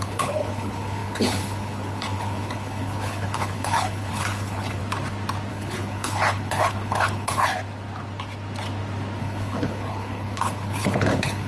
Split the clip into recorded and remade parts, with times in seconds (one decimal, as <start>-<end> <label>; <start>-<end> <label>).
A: 0.0-4.8 remade; 4.8-5.5 recorded; 5.5-7.5 remade; 7.5-9.2 recorded; 9.2-11.5 remade